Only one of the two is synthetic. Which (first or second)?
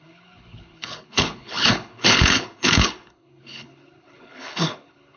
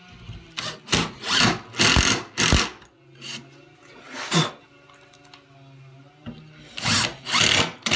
first